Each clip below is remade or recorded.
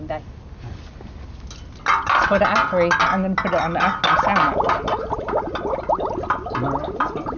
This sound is recorded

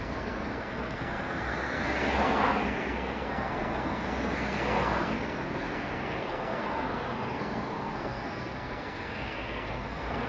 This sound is remade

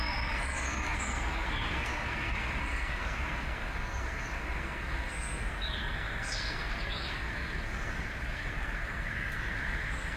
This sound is remade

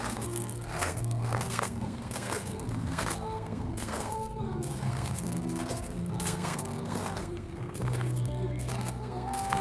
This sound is remade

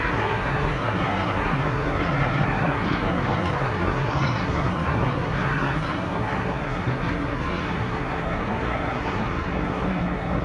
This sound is remade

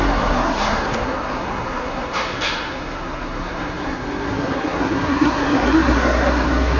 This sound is remade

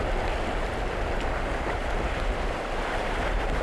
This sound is recorded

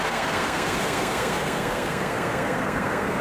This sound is remade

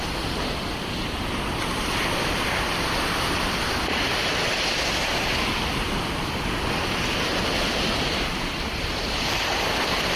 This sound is recorded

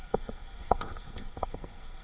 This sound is remade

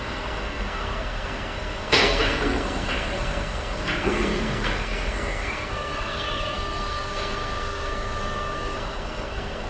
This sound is remade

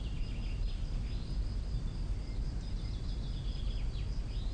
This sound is recorded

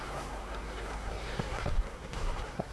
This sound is remade